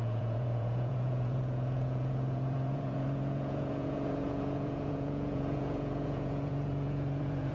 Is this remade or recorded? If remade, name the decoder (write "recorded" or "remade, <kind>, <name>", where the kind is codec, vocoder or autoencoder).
remade, vocoder, Vocos